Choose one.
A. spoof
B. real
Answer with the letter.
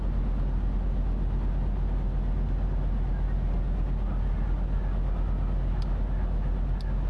B